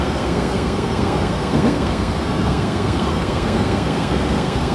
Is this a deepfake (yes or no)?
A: yes